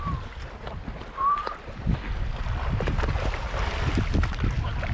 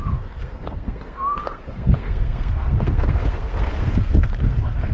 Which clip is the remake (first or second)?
second